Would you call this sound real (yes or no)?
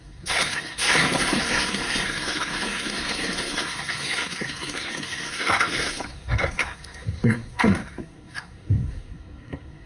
no